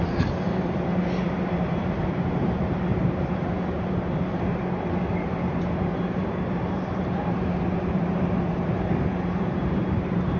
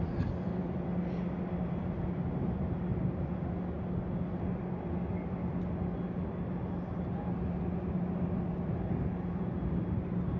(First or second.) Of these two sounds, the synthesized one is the first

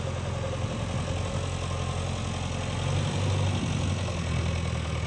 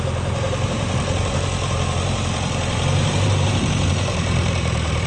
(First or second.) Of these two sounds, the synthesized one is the second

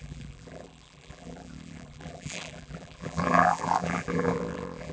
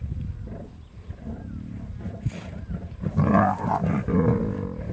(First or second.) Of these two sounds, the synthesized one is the first